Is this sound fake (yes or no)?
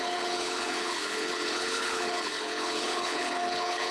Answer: yes